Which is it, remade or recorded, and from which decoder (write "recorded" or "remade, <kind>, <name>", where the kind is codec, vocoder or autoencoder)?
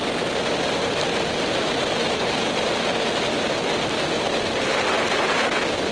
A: remade, vocoder, BigVGAN v2